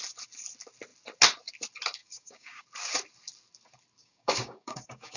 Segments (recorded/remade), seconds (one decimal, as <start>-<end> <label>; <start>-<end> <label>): 0.0-2.0 recorded; 2.0-2.6 remade; 2.6-4.0 recorded; 4.0-5.2 remade